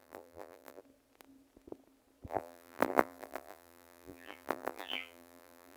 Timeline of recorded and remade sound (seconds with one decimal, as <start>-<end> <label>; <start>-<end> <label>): 0.0-0.8 remade; 0.8-2.3 recorded; 2.3-5.8 remade